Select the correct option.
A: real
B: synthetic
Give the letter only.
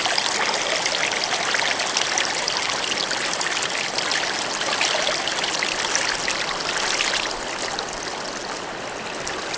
A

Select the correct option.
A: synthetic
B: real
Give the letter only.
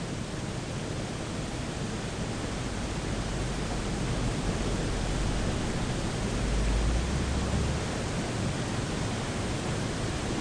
B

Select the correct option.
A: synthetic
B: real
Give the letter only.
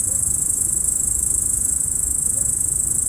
A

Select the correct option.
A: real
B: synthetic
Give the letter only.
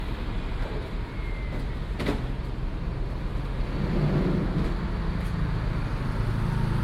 A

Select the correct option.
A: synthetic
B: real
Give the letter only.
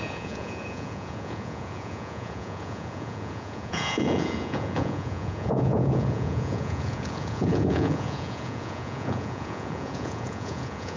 A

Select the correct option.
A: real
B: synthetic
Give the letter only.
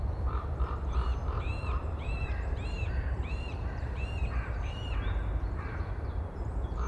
B